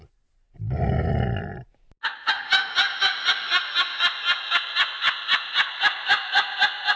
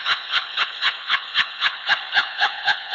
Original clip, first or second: first